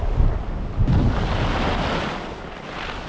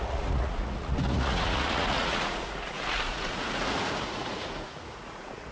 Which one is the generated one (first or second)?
second